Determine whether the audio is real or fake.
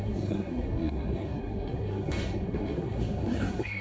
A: fake